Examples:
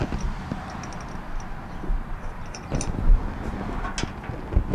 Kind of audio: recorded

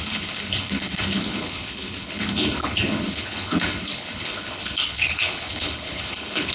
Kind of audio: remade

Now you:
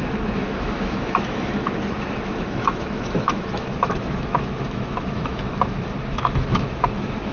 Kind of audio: remade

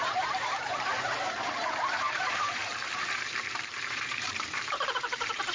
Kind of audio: remade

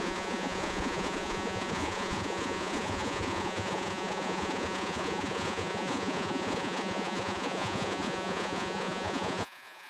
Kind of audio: remade